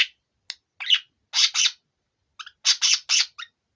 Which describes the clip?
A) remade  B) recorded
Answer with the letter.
B